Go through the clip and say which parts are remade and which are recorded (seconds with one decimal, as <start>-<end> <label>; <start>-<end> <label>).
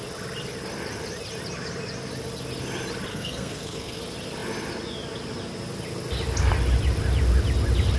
0.0-3.1 recorded; 3.1-4.0 remade; 4.0-8.0 recorded